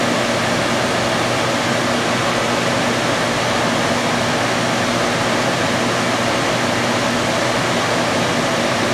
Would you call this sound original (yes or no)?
yes